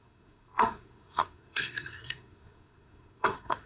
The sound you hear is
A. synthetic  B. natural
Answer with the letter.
A